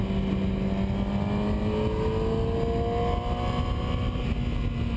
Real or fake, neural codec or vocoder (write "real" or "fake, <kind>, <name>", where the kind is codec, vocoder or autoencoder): real